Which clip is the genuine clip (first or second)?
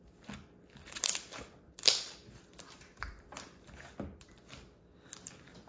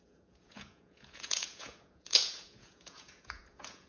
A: first